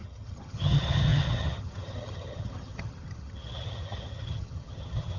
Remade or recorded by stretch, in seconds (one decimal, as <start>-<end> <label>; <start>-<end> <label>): 0.0-5.2 remade